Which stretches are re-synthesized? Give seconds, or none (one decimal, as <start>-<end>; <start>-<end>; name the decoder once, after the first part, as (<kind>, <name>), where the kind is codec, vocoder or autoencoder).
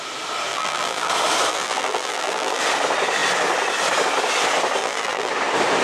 0.5-1.1 (vocoder, BigVGAN v2); 1.5-2.6; 4.8-5.3